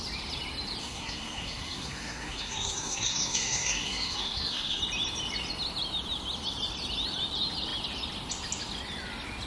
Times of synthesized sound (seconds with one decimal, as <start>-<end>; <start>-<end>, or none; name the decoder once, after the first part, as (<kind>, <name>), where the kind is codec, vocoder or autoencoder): 0.8-4.8 (codec, SNAC)